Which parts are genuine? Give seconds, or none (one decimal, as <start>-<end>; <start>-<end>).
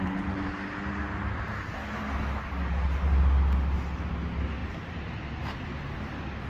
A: 0.0-6.5